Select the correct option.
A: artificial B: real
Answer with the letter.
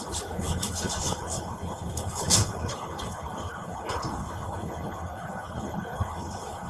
A